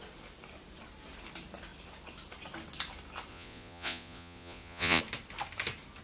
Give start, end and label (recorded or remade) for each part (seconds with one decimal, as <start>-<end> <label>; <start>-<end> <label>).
0.0-3.3 recorded; 3.3-5.0 remade; 5.0-6.0 recorded